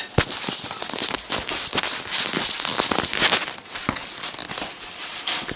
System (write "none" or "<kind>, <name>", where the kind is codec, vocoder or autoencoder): none